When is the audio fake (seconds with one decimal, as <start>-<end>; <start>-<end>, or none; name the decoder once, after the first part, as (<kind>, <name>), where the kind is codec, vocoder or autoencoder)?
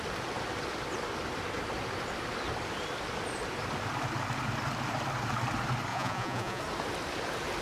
5.9-6.6 (vocoder, Vocos)